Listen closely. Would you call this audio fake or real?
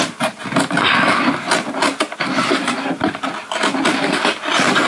real